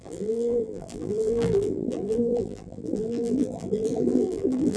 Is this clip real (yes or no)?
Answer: no